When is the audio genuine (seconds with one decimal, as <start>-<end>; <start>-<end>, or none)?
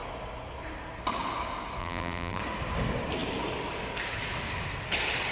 0.0-1.8; 2.4-5.3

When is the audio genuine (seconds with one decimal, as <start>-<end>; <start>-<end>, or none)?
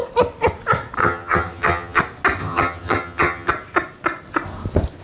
0.0-1.0; 2.0-2.4; 3.5-5.0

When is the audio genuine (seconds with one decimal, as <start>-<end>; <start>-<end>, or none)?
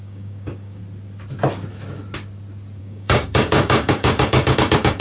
0.8-2.8